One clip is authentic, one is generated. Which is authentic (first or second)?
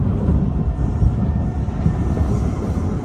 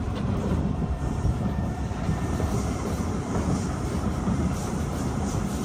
first